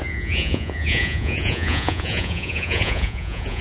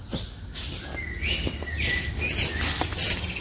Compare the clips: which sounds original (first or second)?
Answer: second